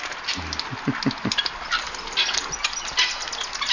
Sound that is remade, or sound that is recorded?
recorded